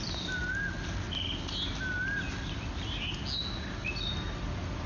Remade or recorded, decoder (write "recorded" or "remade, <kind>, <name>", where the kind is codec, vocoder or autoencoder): recorded